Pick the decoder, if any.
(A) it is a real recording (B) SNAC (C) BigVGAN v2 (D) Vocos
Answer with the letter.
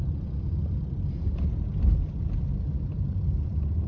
A